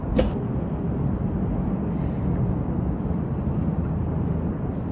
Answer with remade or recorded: recorded